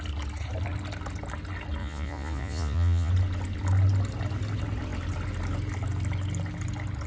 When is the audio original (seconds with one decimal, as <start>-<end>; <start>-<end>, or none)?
0.0-1.8; 3.1-7.1